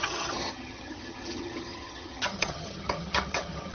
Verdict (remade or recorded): remade